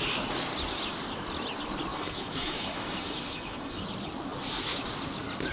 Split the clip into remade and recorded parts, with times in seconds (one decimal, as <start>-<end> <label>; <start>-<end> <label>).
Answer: 0.0-1.9 recorded; 1.9-3.8 remade; 3.8-5.5 recorded